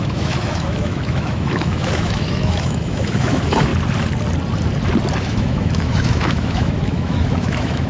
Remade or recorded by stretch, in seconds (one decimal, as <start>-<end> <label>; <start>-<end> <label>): 0.0-3.7 remade; 3.7-5.2 recorded; 5.2-7.9 remade